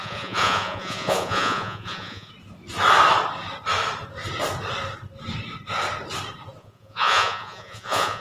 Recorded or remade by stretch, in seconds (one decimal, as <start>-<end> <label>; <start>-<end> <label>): 0.0-2.3 remade; 2.3-6.6 recorded; 6.6-8.2 remade